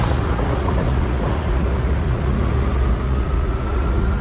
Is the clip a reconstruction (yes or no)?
yes